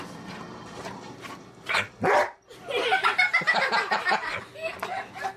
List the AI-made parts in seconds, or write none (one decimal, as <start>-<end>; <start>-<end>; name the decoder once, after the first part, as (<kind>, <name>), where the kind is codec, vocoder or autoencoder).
none

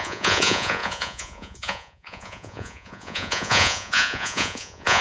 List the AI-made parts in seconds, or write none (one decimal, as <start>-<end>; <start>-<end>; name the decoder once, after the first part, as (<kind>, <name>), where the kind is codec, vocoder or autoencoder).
0.0-5.0 (vocoder, Vocos)

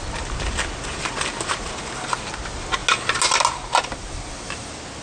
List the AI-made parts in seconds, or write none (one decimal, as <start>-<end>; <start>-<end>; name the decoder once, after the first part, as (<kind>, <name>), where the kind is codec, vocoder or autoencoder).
none